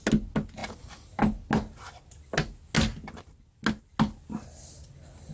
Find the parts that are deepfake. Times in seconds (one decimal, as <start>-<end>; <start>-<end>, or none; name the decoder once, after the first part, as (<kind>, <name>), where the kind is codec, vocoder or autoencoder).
none